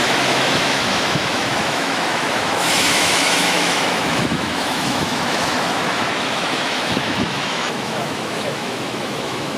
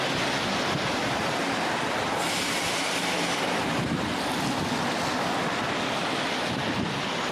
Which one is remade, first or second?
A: first